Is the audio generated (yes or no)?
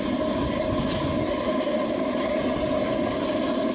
no